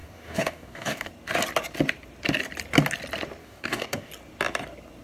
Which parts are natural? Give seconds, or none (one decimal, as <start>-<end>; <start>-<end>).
1.1-3.4; 4.1-5.0